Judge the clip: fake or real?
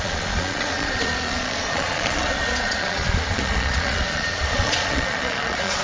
fake